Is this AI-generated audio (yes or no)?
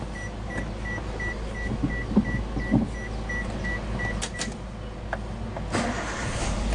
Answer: no